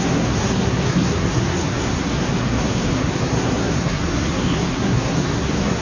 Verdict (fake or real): fake